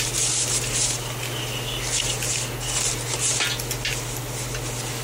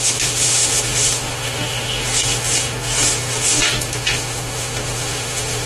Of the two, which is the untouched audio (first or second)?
first